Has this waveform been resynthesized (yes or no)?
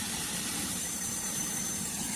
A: yes